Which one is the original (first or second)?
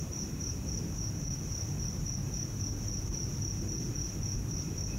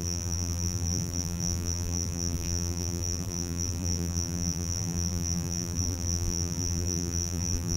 first